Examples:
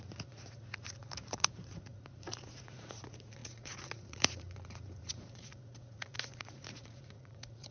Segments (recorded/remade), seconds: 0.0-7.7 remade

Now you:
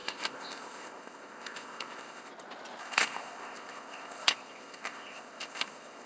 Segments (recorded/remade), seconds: 0.0-2.3 remade; 2.3-2.8 recorded; 2.8-6.1 remade